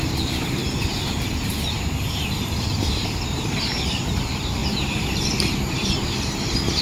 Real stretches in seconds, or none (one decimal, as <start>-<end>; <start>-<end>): 0.6-3.0

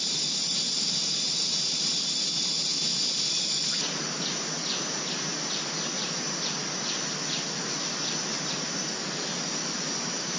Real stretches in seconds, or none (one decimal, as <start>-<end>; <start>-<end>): 0.0-10.4